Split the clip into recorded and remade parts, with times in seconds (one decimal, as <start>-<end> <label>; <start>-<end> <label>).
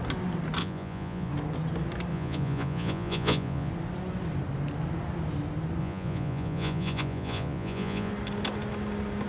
0.0-0.6 recorded; 0.6-1.3 remade; 1.3-2.1 recorded; 2.1-3.7 remade; 3.7-5.8 recorded; 5.8-8.1 remade; 8.1-9.3 recorded